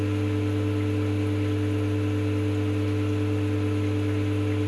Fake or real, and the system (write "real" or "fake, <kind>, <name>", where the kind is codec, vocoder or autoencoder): real